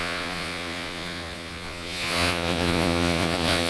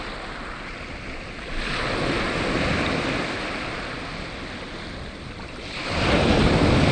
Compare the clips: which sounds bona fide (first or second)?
second